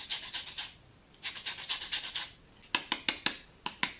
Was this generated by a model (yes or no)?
no